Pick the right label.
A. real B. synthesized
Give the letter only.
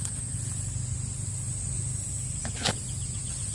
A